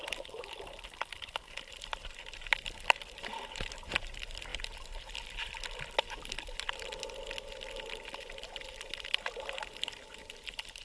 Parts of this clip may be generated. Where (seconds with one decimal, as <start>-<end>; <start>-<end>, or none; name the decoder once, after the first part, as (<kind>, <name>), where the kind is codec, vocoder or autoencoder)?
0.0-3.7 (vocoder, BigVGAN v2)